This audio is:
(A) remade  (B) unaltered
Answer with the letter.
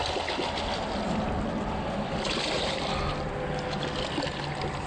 B